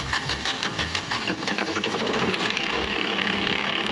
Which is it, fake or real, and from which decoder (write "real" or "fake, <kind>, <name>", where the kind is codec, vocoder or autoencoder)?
fake, codec, DAC